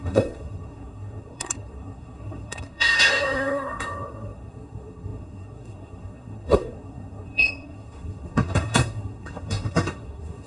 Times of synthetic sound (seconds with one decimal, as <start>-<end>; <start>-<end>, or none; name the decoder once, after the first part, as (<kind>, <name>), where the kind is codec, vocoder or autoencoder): 0.0-10.5 (codec, SNAC)